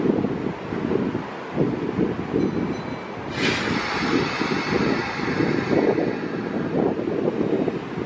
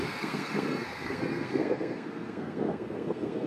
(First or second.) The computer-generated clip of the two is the second